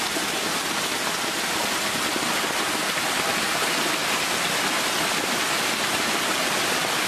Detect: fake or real real